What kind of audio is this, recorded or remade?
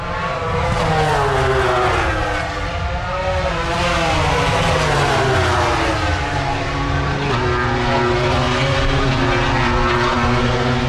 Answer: recorded